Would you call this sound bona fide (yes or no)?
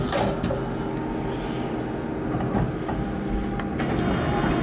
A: yes